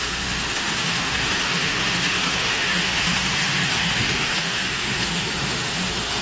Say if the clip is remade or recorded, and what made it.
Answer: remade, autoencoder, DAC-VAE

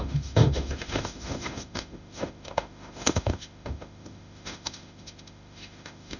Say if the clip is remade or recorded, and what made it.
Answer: remade, autoencoder, DAC-VAE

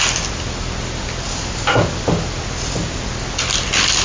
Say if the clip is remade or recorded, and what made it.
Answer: recorded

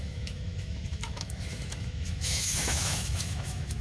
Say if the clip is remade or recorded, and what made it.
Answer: remade, autoencoder, DAC-VAE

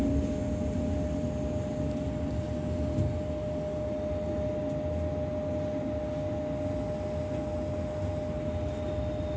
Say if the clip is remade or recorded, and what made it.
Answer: recorded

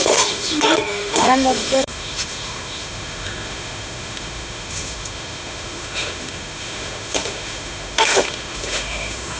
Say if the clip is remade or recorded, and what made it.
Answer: remade, autoencoder, DAC-VAE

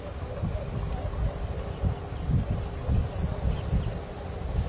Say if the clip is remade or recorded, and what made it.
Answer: recorded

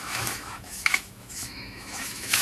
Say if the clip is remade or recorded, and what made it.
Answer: remade, autoencoder, DAC-VAE